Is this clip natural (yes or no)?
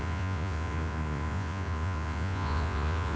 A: no